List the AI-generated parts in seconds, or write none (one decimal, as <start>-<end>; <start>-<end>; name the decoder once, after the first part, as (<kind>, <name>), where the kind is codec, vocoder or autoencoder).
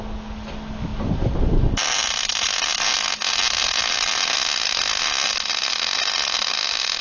none